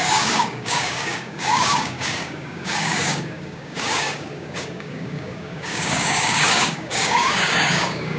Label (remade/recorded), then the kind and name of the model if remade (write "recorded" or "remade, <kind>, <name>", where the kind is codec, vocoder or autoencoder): remade, codec, DAC